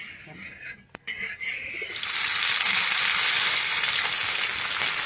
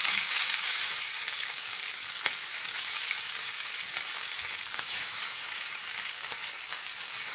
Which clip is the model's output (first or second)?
second